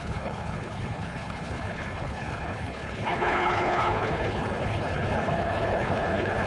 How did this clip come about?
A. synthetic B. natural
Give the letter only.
A